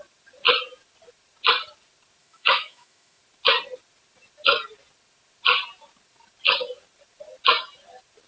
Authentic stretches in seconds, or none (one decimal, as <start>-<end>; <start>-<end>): 0.0-2.2; 3.2-8.3